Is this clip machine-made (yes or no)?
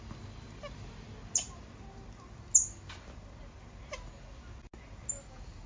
no